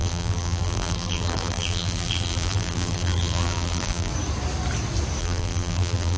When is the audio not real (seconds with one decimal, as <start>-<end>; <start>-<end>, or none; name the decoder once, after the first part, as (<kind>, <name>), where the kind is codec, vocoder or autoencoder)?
0.0-4.1 (vocoder, BigVGAN v2); 5.2-6.2